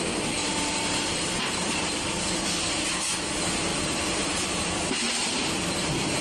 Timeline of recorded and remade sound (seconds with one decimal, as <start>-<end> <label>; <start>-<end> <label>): 0.0-0.4 recorded; 0.4-1.8 remade; 1.8-3.7 recorded; 3.7-5.5 remade; 5.5-6.2 recorded